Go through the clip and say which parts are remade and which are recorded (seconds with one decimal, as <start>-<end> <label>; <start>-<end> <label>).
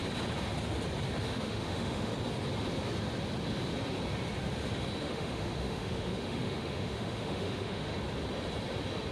0.0-1.2 recorded; 1.2-2.1 remade; 2.1-5.0 recorded; 5.0-7.9 remade; 7.9-9.1 recorded